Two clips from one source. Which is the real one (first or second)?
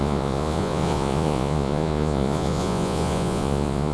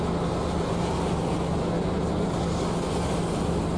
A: second